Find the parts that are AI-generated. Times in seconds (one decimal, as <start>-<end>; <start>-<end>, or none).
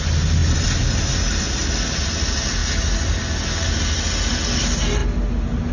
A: none